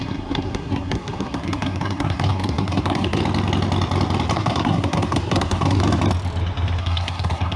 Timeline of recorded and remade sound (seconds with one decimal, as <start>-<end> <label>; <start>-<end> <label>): 0.0-3.2 remade; 3.2-4.3 recorded; 4.3-5.8 remade; 5.8-6.8 recorded; 6.8-7.6 remade